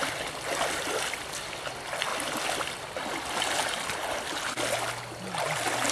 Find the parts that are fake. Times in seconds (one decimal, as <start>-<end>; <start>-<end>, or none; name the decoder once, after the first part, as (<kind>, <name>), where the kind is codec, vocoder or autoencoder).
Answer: none